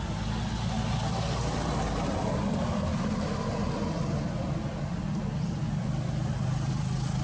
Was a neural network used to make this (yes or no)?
no